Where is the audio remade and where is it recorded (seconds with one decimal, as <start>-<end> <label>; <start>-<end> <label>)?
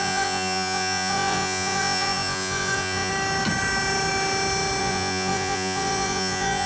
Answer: 0.0-3.1 remade; 3.1-4.8 recorded; 4.8-6.7 remade